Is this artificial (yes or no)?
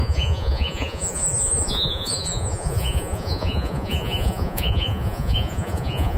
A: yes